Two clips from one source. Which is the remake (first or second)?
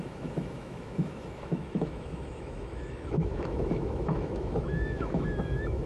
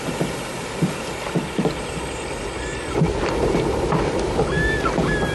first